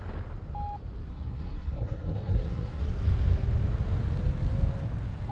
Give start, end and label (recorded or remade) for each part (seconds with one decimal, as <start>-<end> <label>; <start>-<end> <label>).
0.0-1.1 recorded; 1.1-2.8 remade; 2.8-5.3 recorded